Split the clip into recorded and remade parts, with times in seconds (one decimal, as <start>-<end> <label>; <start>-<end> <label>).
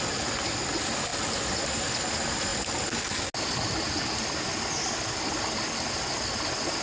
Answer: 0.0-6.8 recorded